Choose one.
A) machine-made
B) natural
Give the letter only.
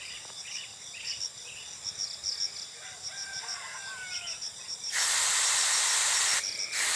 B